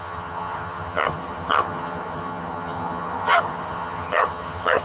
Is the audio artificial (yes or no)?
yes